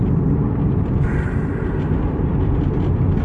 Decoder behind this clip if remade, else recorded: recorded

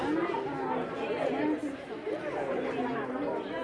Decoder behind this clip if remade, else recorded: recorded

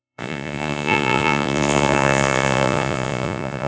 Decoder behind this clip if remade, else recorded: remade, vocoder, Vocos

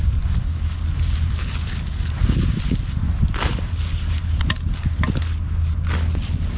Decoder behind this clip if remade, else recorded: recorded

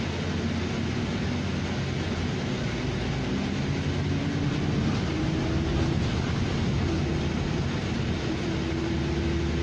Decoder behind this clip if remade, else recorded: recorded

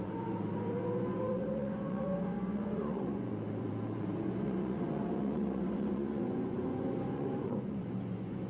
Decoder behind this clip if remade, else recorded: remade, vocoder, Vocos